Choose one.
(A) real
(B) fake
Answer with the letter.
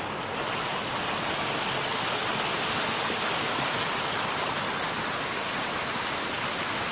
A